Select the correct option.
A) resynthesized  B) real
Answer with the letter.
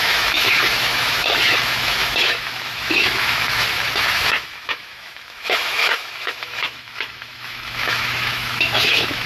A